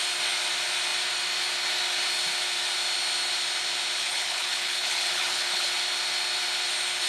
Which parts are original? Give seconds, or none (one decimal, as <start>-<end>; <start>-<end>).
0.0-4.0; 5.7-7.1